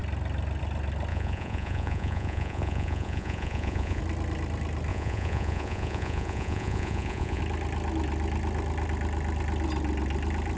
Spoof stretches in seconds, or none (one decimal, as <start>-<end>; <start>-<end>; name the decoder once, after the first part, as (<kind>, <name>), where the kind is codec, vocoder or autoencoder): 1.1-4.0 (vocoder, Vocos); 4.9-7.4